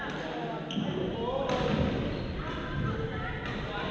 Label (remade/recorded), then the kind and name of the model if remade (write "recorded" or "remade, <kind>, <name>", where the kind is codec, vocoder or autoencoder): recorded